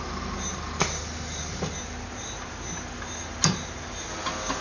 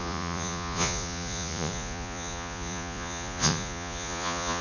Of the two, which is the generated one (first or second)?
second